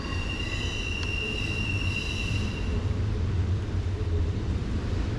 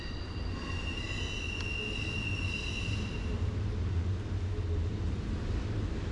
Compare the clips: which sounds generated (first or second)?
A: first